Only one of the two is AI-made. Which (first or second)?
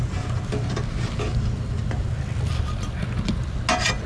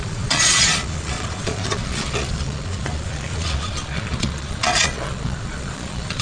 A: second